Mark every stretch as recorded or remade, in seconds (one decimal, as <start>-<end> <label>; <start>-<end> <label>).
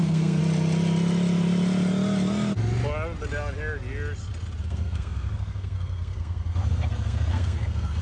0.0-0.4 remade; 0.4-4.6 recorded; 4.6-8.0 remade